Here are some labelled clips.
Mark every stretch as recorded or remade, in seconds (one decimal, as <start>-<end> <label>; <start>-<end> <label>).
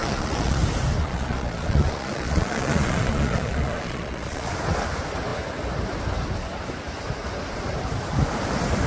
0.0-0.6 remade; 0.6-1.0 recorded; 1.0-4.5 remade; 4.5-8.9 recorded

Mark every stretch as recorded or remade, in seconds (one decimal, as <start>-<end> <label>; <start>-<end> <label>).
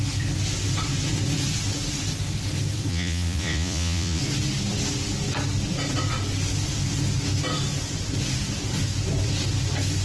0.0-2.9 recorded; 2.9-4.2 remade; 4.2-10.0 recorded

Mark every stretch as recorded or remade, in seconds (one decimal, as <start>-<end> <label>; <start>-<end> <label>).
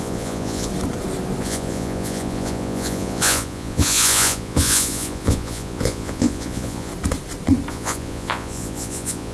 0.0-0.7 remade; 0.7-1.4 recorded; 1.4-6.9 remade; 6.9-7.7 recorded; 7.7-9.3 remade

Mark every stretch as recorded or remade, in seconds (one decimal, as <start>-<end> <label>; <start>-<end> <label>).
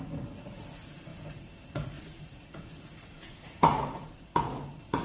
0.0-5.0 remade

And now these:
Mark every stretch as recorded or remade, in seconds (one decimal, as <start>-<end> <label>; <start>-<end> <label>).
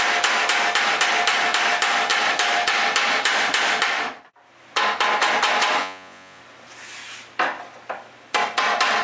0.0-5.8 recorded; 5.8-6.4 remade; 6.4-9.0 recorded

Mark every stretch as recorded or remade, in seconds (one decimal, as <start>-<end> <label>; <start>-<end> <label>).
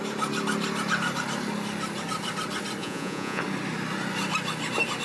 0.0-2.8 recorded; 2.8-3.4 remade; 3.4-5.0 recorded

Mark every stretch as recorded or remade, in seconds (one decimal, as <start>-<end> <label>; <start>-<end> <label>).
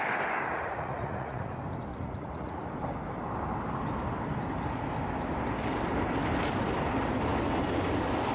0.0-0.5 recorded; 0.5-1.5 remade; 1.5-1.9 recorded; 1.9-2.6 remade; 2.6-8.3 recorded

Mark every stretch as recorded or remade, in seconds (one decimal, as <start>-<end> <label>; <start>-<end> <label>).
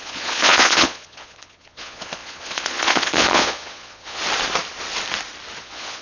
0.0-4.2 remade; 4.2-5.6 recorded; 5.6-6.0 remade